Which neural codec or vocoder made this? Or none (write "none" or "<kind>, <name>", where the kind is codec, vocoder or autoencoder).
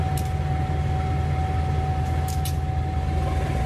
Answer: none